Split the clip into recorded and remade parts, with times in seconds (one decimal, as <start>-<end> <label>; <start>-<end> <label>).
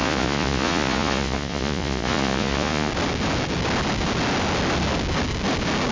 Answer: 0.0-2.9 remade; 2.9-5.9 recorded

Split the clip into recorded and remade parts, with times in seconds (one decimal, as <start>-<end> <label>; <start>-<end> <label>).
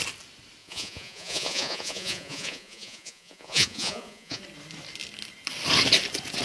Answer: 0.0-0.6 recorded; 0.6-4.4 remade; 4.4-6.4 recorded